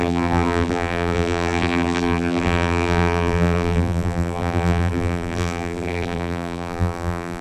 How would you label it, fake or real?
fake